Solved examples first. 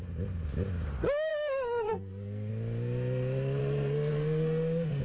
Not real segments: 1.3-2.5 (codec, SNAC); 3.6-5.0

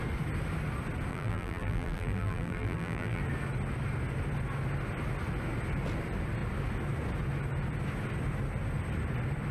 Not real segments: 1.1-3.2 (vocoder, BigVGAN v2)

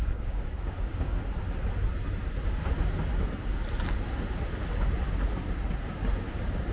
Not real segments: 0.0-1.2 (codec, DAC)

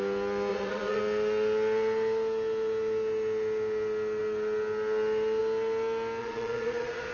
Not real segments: 0.5-1.0 (vocoder, Vocos); 6.2-7.1

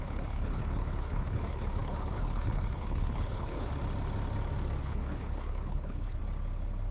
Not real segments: 0.0-3.7 (codec, HILCodec); 4.8-6.2